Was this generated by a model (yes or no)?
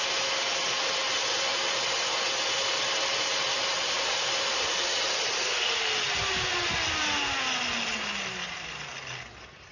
no